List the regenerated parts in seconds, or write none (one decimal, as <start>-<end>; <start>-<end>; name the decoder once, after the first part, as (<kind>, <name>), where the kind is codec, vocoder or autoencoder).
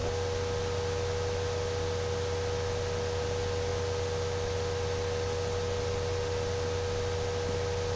none